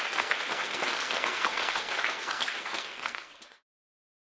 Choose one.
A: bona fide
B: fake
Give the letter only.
B